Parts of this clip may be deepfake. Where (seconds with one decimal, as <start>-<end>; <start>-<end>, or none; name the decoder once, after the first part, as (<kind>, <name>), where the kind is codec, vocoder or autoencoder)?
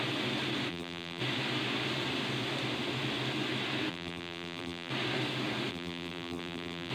0.7-1.2 (vocoder, BigVGAN v2); 3.9-4.9; 5.7-6.9